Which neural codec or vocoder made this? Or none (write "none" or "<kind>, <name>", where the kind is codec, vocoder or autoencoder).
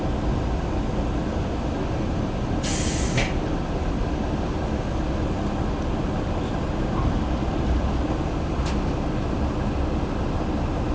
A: none